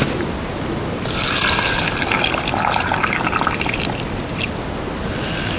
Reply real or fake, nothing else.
real